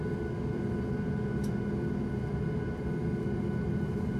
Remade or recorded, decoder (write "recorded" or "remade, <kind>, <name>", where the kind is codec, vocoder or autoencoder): recorded